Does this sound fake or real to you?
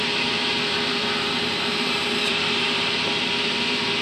fake